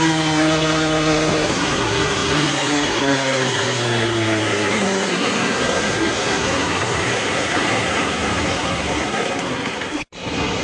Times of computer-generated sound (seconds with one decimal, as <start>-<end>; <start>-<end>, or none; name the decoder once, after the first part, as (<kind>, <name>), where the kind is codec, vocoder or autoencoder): 0.0-10.6 (codec, SNAC)